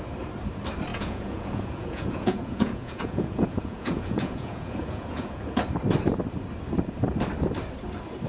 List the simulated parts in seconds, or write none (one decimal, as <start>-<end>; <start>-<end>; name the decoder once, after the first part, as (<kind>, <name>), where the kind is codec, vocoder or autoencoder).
0.9-5.4 (vocoder, Vocos)